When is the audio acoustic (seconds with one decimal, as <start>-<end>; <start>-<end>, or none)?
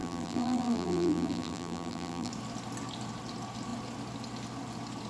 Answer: 2.3-5.1